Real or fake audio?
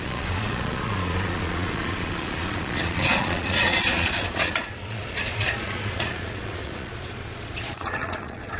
fake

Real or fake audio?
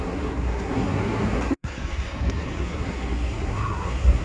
fake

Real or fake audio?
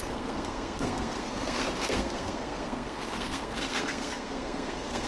fake